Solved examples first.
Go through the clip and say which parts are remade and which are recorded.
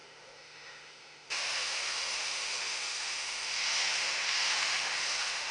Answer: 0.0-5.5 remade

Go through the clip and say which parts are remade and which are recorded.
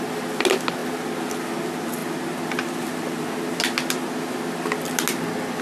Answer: 0.0-5.6 recorded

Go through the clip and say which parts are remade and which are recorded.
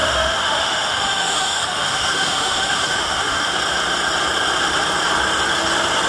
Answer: 0.0-3.5 remade; 3.5-6.1 recorded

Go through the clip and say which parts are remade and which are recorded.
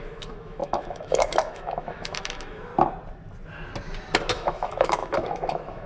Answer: 0.0-2.7 remade; 2.7-4.3 recorded; 4.3-5.9 remade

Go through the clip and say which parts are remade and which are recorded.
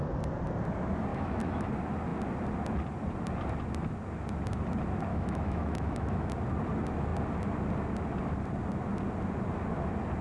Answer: 0.0-1.1 recorded; 1.1-1.7 remade; 1.7-5.1 recorded; 5.1-6.3 remade; 6.3-10.2 recorded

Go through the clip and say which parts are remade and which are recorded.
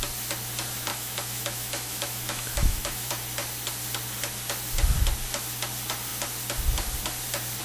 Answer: 0.0-0.9 recorded; 0.9-3.1 remade; 3.1-7.6 recorded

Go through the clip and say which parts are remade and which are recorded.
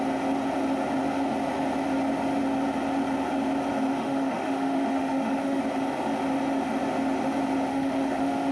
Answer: 0.0-3.9 recorded; 3.9-5.6 remade; 5.6-7.7 recorded; 7.7-8.5 remade